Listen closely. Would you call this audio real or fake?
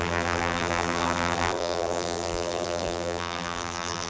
fake